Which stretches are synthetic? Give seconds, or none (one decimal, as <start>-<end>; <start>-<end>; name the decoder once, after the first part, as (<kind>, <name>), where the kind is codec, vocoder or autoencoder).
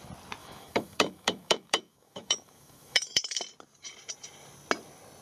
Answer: 0.4-3.4 (autoencoder, DAC-VAE)